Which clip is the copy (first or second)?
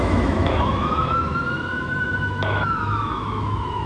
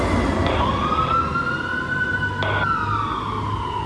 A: first